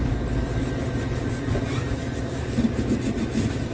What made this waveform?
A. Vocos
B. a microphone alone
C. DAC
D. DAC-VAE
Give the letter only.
B